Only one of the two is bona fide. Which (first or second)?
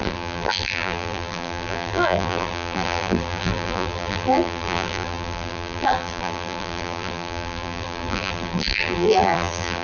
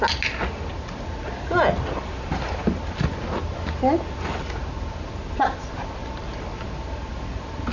second